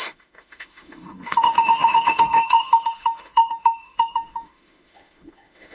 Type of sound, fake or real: fake